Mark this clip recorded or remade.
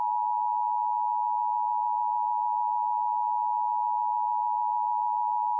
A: recorded